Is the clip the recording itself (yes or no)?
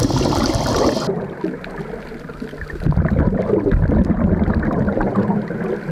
yes